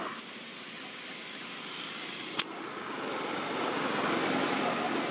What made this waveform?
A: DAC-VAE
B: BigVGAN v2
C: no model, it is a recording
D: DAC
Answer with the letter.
C